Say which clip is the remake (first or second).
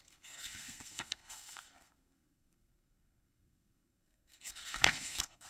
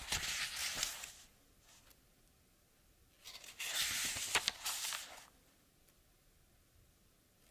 first